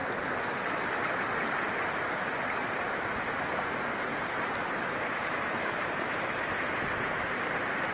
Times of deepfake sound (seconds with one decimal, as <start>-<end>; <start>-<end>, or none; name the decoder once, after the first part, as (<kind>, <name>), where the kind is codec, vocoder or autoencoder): 2.6-3.3 (vocoder, BigVGAN v2); 4.1-7.9